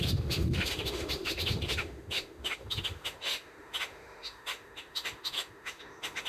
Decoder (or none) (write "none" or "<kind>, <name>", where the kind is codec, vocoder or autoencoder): autoencoder, DAC-VAE